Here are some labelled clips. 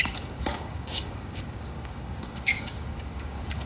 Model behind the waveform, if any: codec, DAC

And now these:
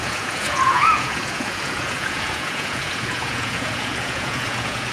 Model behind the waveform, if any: vocoder, Vocos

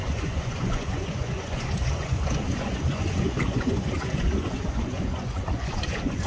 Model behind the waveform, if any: vocoder, Vocos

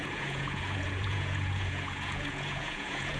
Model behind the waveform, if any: vocoder, Vocos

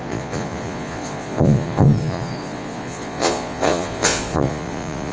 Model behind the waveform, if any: vocoder, Vocos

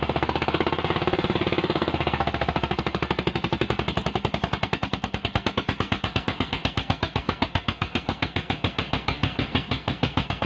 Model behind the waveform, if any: codec, SNAC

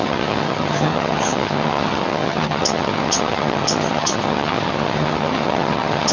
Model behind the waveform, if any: vocoder, HiFi-GAN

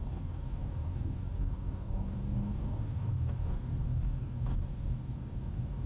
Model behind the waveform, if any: codec, DAC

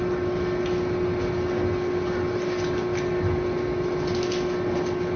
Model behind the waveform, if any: none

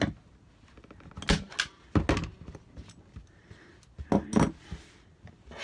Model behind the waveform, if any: none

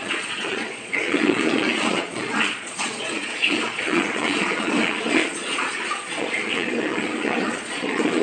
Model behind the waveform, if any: vocoder, Vocos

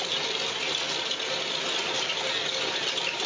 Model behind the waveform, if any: none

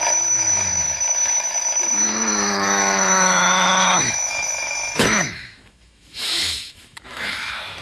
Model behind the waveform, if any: autoencoder, DAC-VAE